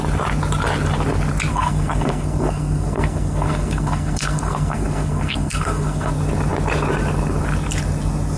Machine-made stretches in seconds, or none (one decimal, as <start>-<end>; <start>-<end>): 1.5-6.1